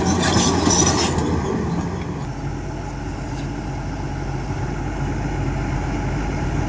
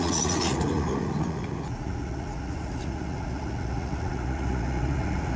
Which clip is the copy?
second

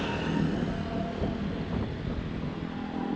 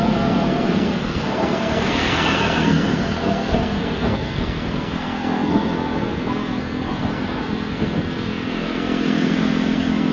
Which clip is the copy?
second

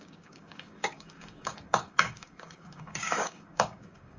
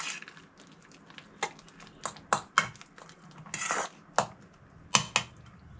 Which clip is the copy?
first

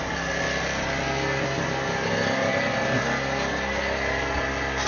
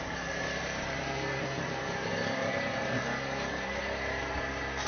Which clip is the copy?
second